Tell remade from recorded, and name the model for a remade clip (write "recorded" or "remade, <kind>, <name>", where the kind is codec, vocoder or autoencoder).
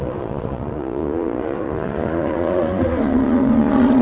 remade, vocoder, Vocos